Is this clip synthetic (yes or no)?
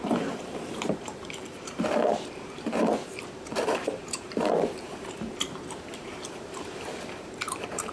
yes